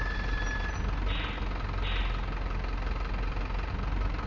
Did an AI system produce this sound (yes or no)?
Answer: no